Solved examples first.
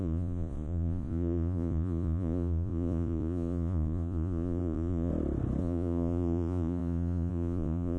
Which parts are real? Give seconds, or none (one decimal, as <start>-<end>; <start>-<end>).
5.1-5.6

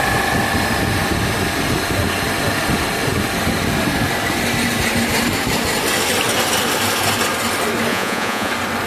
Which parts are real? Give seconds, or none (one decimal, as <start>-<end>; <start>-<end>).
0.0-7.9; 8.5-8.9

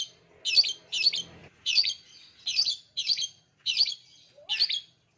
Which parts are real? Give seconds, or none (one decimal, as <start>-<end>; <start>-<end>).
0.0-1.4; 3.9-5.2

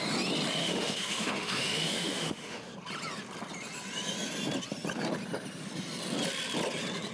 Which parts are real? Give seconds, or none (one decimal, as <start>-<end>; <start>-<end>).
0.0-0.6; 2.7-7.1

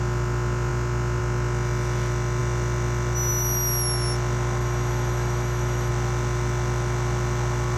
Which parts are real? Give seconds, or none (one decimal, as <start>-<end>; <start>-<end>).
0.0-4.6; 5.9-7.8

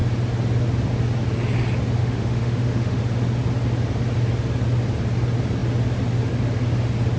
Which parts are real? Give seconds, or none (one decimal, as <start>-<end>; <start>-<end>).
0.0-2.0; 3.0-7.2

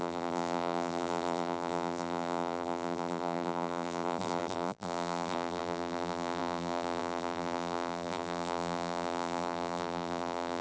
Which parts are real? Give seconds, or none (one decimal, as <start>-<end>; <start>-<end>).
none

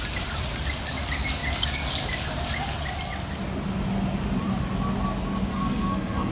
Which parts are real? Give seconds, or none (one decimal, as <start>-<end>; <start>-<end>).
0.0-5.5